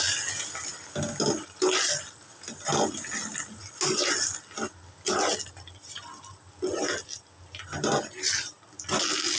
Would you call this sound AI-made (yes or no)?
no